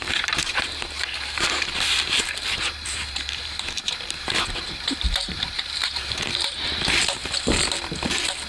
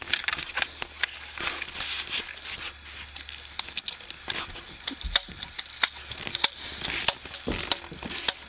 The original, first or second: second